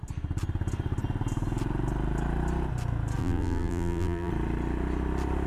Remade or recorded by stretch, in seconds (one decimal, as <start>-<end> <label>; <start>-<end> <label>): 0.0-3.2 recorded; 3.2-4.3 remade; 4.3-5.5 recorded